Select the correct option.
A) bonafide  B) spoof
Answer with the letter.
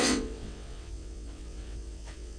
B